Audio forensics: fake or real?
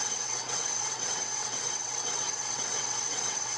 fake